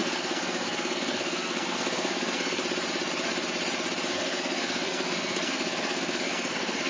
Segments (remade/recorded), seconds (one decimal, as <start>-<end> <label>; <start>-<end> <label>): 0.0-2.6 remade; 2.6-4.1 recorded; 4.1-6.9 remade